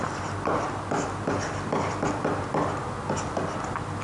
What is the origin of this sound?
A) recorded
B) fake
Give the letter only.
A